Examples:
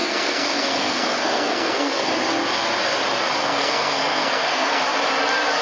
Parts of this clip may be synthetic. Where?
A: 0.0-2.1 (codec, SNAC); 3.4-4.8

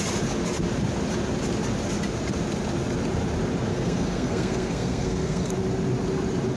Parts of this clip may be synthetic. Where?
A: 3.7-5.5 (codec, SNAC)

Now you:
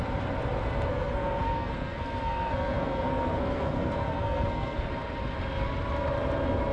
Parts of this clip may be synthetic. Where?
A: 0.9-4.9 (codec, SNAC)

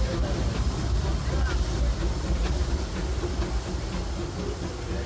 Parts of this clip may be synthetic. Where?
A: none

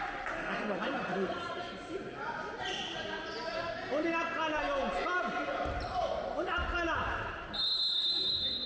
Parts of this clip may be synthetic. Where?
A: 0.4-1.6 (codec, SNAC)

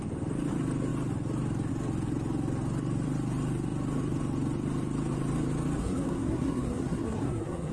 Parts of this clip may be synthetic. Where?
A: 5.8-7.7 (codec, SNAC)